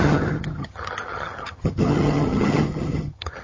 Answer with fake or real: fake